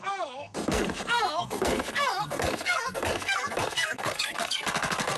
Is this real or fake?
fake